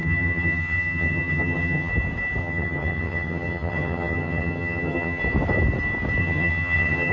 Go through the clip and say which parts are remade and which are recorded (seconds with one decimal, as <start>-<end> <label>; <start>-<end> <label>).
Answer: 0.0-1.9 remade; 1.9-2.4 recorded; 2.4-5.2 remade; 5.2-6.2 recorded; 6.2-7.1 remade